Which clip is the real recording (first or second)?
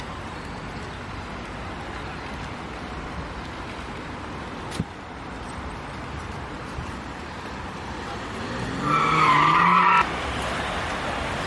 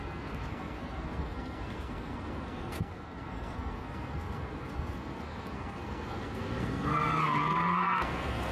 first